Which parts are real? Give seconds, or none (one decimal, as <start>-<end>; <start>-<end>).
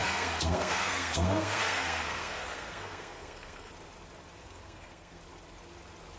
3.7-4.4; 5.2-6.2